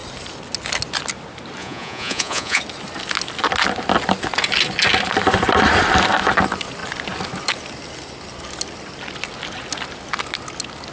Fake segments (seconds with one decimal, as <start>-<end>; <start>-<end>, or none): 1.6-2.6